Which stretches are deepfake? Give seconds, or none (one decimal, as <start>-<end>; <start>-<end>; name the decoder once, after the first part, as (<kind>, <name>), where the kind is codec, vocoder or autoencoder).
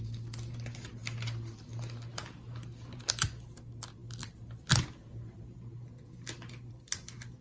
none